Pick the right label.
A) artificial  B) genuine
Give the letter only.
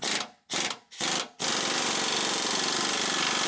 B